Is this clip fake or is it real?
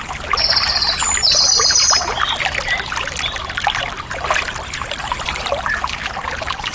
real